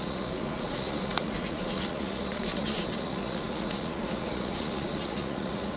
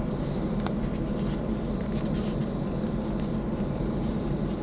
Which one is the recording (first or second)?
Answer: second